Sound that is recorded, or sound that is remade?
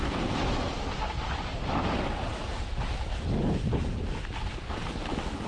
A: recorded